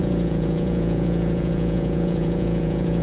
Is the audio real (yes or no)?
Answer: no